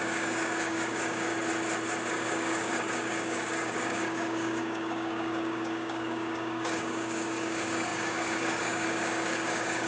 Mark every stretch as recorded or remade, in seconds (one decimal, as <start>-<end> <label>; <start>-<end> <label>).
0.0-1.3 remade; 1.3-2.1 recorded; 2.1-9.9 remade